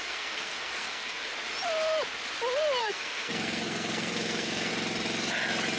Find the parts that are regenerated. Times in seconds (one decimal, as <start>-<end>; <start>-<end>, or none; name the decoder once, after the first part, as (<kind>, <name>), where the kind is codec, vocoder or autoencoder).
0.0-1.3 (codec, SNAC); 2.8-4.7